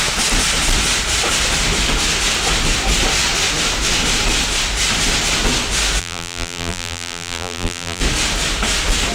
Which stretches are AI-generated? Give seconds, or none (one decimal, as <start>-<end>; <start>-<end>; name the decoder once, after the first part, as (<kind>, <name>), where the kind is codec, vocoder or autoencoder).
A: 6.0-8.0 (vocoder, BigVGAN v2)